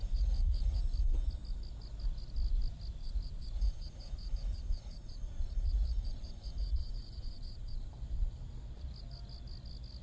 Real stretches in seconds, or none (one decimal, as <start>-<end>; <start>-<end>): 0.8-3.0; 7.9-10.0